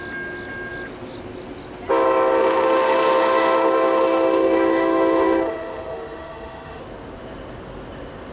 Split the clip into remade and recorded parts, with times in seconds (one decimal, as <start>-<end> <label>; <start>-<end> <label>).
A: 0.0-2.4 recorded; 2.4-6.8 remade; 6.8-8.3 recorded